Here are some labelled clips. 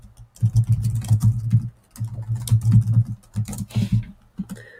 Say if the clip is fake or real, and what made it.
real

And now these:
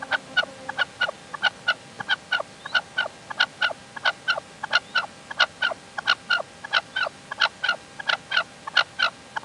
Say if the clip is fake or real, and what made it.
real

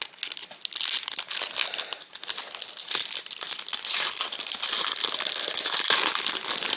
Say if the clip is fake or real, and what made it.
real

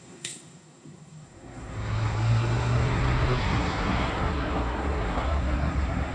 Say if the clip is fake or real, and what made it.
fake, codec, SNAC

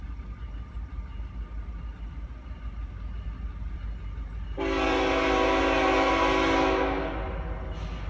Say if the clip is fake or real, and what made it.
real